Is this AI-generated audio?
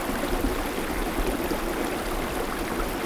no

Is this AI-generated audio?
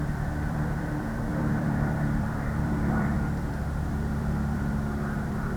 yes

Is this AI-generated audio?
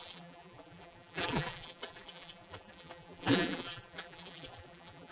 yes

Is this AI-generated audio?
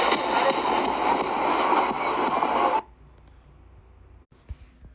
no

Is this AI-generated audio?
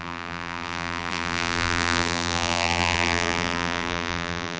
yes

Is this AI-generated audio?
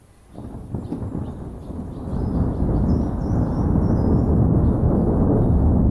no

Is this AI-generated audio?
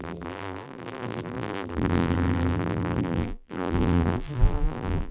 yes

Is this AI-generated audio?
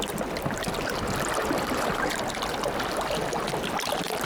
no